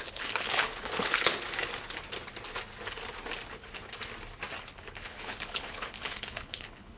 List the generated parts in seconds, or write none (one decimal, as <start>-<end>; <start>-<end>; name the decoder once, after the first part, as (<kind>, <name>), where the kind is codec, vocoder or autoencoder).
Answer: 0.0-1.3 (codec, HILCodec); 4.6-7.0